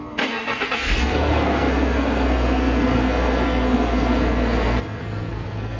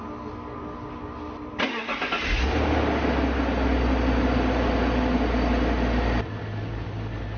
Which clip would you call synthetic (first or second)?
first